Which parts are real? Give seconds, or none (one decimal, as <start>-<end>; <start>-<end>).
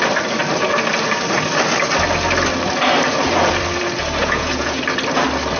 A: 0.0-4.2; 4.8-5.6